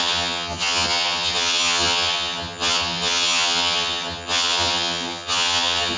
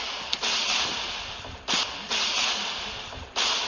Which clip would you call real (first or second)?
second